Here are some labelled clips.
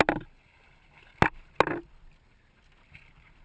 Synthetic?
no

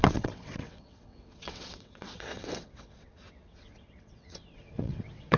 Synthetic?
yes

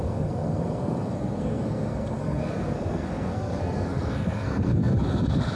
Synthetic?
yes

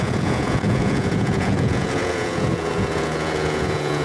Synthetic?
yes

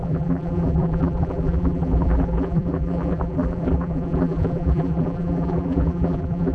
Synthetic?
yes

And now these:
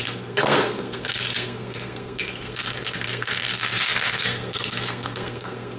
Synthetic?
yes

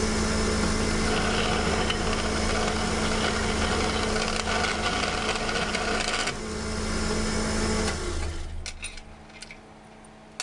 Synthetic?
no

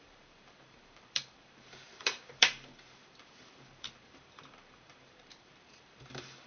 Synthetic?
yes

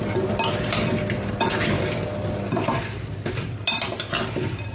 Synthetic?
no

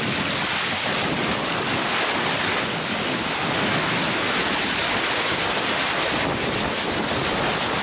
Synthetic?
no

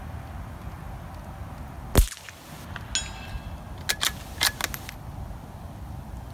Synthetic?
no